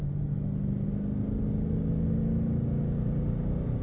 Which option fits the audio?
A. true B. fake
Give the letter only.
A